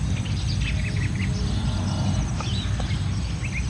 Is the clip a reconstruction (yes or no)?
no